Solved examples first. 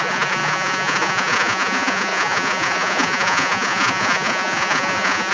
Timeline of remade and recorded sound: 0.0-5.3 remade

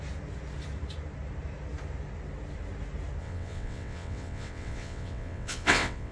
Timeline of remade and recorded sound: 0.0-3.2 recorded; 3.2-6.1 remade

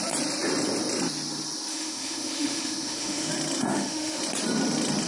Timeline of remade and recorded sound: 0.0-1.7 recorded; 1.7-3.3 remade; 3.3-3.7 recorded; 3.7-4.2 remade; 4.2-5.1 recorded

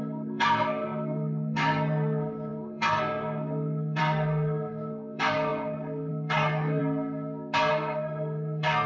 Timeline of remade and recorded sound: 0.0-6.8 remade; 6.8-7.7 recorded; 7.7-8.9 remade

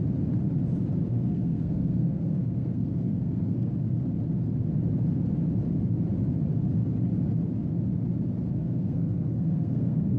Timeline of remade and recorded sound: 0.0-1.1 recorded; 1.1-3.7 remade; 3.7-8.6 recorded; 8.6-10.2 remade

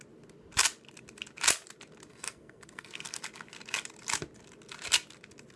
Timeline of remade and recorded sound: 0.0-2.1 recorded; 2.1-3.2 remade; 3.2-5.6 recorded

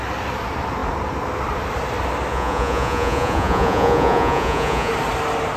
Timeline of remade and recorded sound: 0.0-2.3 recorded; 2.3-4.9 remade; 4.9-5.6 recorded

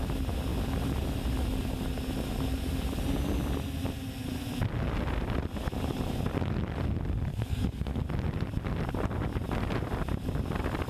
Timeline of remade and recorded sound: 0.0-7.3 recorded; 7.3-8.0 remade; 8.0-10.9 recorded